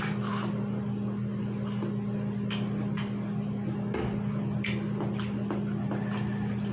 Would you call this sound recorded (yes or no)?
yes